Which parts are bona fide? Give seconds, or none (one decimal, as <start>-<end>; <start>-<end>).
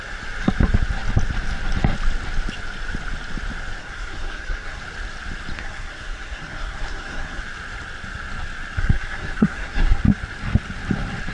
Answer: 0.0-3.8; 4.8-5.5; 7.4-8.8; 10.0-11.3